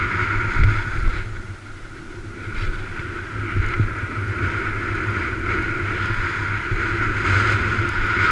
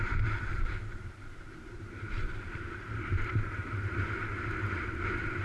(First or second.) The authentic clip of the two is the first